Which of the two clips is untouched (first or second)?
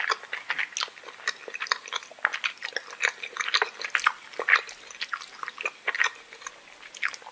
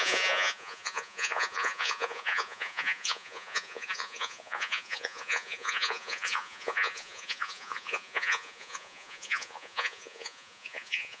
first